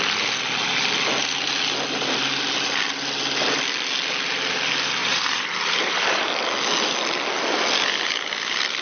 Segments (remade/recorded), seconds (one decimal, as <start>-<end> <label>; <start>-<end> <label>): 0.0-5.0 recorded; 5.0-6.3 remade; 6.3-8.8 recorded